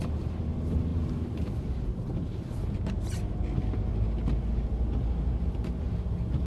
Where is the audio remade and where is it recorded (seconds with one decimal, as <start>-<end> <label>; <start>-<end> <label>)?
0.0-6.5 recorded